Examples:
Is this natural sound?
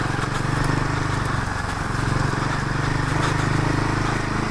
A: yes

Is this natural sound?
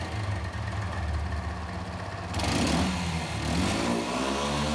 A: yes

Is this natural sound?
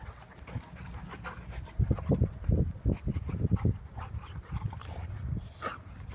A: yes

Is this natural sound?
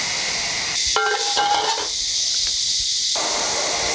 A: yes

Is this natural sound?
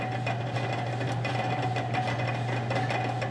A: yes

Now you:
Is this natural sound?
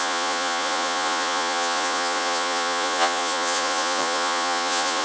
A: no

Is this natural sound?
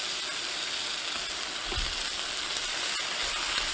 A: yes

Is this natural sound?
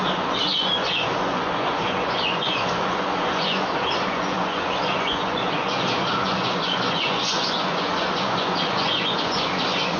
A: no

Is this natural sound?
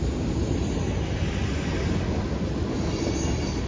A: yes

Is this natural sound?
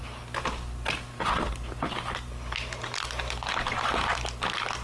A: yes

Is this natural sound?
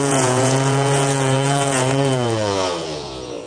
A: no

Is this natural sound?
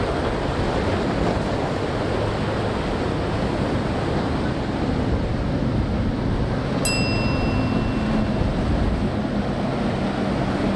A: yes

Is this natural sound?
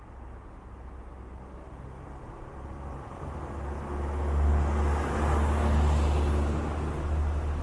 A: yes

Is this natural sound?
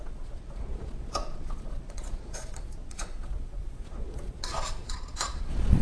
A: no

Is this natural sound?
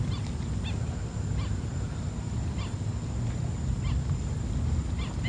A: yes